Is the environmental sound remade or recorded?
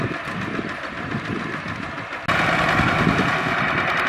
recorded